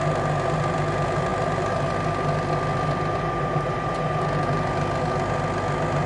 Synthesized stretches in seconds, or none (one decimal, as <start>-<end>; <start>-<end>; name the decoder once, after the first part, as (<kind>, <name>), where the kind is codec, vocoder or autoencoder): none